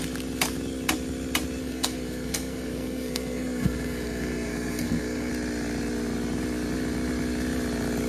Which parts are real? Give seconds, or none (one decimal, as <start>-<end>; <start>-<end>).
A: 0.0-1.6; 5.3-8.1